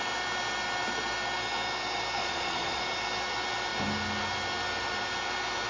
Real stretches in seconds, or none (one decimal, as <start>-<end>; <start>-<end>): 0.0-2.2; 2.8-5.7

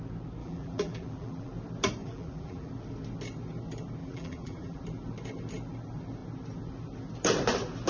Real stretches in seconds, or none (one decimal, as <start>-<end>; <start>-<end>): 0.0-0.4; 1.5-2.0; 2.7-4.0; 4.8-7.9